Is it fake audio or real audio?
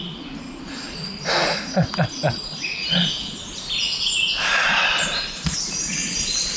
real